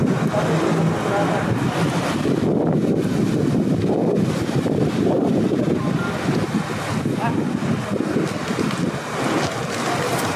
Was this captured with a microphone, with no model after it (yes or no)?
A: yes